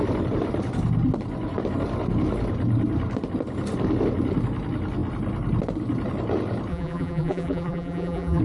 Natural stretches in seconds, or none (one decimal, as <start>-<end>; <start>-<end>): 0.0-6.7